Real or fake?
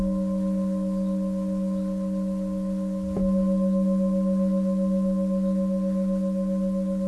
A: real